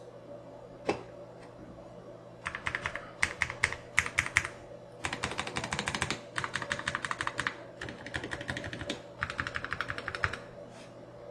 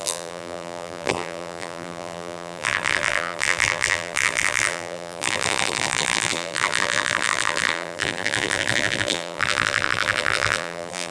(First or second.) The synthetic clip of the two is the second